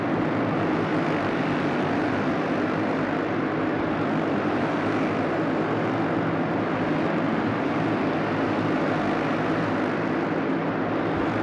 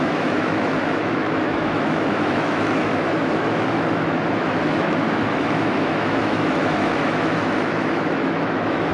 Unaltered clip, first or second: first